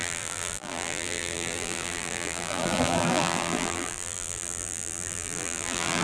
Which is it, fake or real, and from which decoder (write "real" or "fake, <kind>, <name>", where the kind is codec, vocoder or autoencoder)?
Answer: fake, vocoder, BigVGAN v2